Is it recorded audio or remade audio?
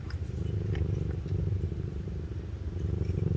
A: remade